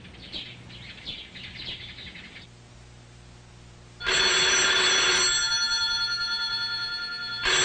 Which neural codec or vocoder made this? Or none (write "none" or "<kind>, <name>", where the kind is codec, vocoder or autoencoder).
none